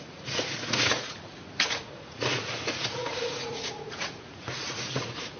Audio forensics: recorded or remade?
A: remade